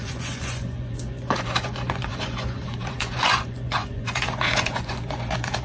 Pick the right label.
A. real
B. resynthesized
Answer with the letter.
B